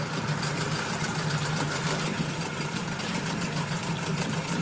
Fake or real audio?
fake